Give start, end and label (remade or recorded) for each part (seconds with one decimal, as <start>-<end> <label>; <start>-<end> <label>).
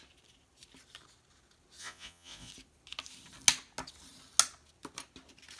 0.0-1.8 recorded; 1.8-2.5 remade; 2.5-5.6 recorded